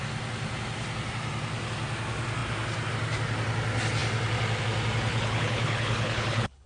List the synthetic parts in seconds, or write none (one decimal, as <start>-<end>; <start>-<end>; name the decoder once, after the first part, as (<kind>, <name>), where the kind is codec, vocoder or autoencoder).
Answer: 5.1-6.7 (codec, HILCodec)